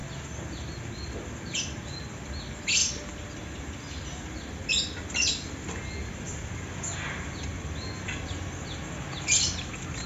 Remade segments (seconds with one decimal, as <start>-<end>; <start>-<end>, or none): none